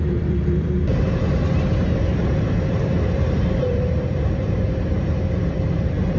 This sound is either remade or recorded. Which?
remade